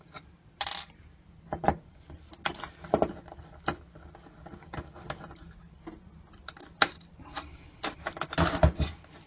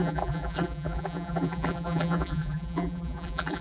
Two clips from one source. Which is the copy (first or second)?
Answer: second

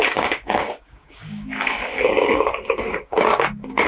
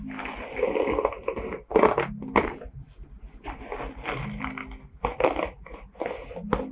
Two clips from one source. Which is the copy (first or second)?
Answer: first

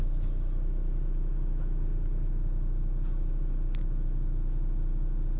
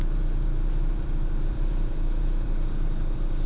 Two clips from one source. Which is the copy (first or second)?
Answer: second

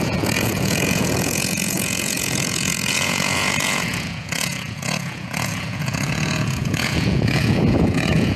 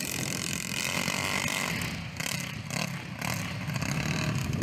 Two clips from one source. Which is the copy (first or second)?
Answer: first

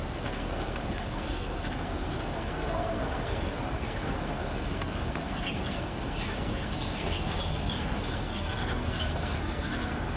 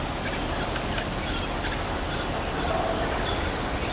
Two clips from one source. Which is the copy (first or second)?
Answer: first